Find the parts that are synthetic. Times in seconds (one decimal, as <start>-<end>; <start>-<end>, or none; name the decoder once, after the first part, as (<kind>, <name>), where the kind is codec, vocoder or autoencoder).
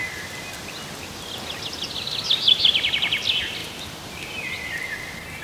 3.6-5.4 (vocoder, BigVGAN v2)